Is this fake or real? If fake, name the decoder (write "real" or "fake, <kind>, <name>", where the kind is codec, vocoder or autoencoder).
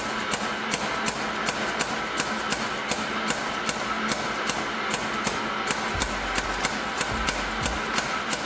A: real